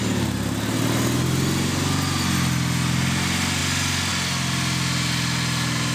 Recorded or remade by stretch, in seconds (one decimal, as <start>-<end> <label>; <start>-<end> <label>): 0.0-5.9 recorded